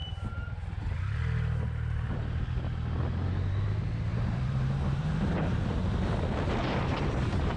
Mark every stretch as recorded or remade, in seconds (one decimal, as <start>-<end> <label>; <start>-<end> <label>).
0.0-4.1 recorded; 4.1-5.6 remade; 5.6-6.6 recorded; 6.6-7.6 remade

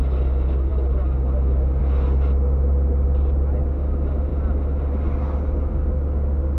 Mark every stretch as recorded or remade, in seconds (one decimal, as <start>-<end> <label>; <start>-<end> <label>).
0.0-6.6 recorded